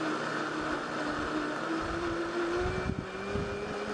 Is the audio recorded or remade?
recorded